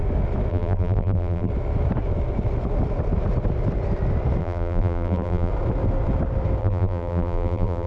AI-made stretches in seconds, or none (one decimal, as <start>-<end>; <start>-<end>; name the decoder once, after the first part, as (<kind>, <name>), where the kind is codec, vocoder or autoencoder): 0.5-1.5 (vocoder, BigVGAN v2); 4.4-5.5; 6.6-7.9